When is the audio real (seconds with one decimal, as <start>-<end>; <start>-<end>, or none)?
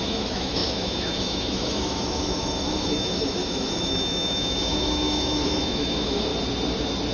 6.3-7.1